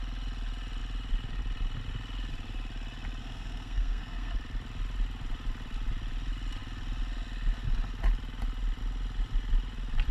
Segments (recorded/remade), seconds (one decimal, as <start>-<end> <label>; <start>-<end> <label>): 0.0-3.2 recorded; 3.2-4.3 remade; 4.3-10.1 recorded